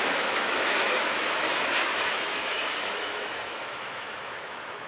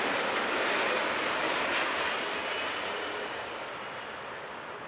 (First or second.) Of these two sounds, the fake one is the first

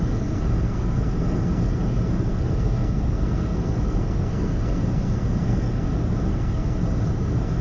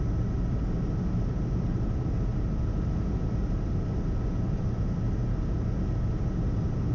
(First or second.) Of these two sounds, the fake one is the first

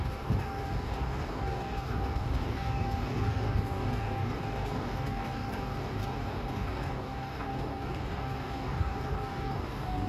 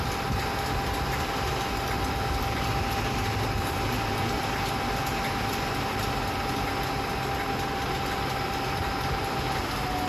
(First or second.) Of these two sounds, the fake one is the first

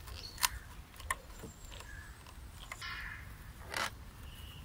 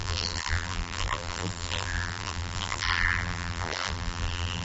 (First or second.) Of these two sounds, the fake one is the second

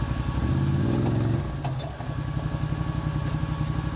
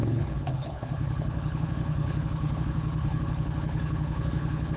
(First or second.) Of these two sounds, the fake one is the second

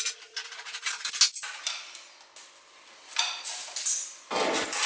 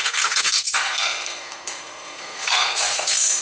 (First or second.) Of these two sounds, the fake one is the second